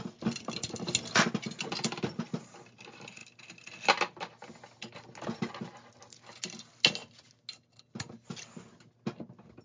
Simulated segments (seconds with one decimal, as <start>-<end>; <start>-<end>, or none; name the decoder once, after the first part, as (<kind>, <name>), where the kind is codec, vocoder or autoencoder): none